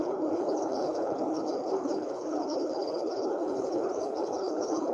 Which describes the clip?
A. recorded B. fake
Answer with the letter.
B